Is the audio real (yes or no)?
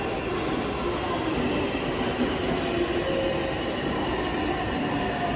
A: yes